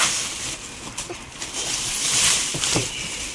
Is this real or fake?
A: fake